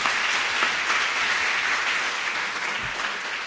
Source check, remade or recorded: recorded